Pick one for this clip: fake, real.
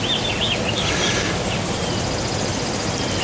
real